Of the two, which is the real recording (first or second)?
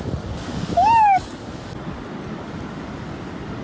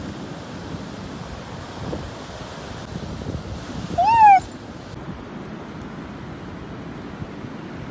second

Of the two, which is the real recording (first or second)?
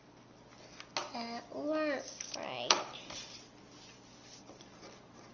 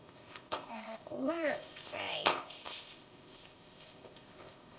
first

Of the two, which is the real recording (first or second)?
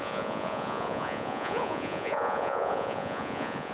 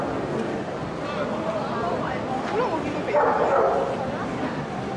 second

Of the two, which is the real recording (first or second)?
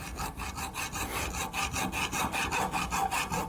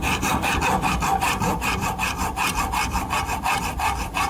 first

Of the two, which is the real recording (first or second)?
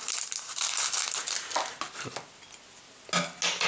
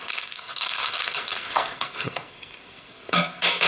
first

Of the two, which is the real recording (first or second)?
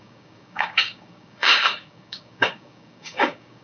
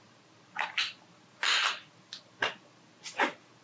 second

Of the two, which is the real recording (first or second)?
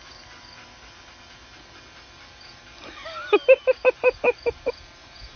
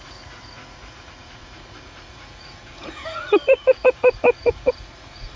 first